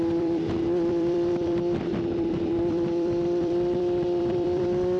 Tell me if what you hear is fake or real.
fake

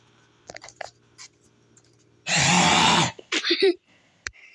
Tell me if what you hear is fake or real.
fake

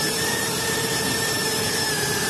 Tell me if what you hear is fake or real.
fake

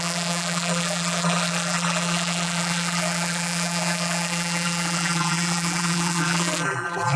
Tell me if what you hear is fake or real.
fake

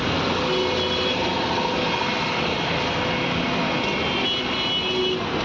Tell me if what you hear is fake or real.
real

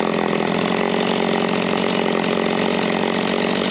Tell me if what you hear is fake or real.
real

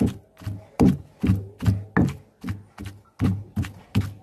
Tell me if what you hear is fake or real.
real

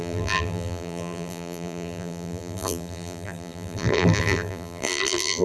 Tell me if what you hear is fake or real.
fake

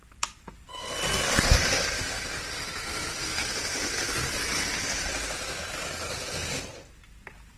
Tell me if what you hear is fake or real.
fake